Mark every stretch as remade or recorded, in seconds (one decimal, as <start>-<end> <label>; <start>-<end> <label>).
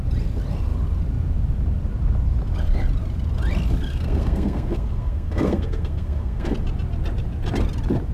0.0-3.9 recorded; 3.9-6.5 remade; 6.5-8.1 recorded